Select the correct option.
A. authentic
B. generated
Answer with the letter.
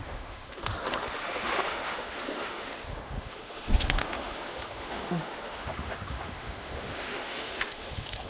B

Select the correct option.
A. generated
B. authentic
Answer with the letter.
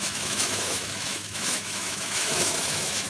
A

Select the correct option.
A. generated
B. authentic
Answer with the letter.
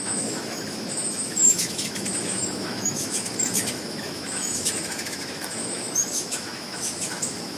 A